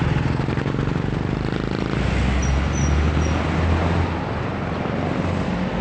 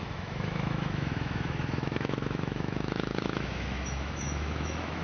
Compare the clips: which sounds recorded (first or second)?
first